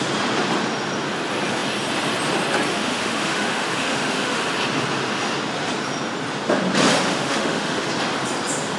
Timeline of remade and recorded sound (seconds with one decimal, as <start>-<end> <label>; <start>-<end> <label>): 0.0-2.7 recorded; 2.7-4.4 remade; 4.4-7.1 recorded; 7.1-7.9 remade; 7.9-8.8 recorded